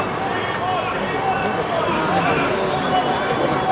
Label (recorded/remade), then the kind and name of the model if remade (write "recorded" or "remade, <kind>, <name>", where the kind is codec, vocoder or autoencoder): recorded